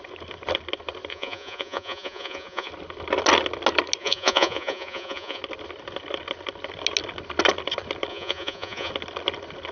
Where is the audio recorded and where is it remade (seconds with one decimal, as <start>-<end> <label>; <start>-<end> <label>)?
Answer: 0.0-1.1 recorded; 1.1-2.7 remade; 2.7-4.0 recorded; 4.0-5.4 remade; 5.4-8.1 recorded; 8.1-8.9 remade; 8.9-9.7 recorded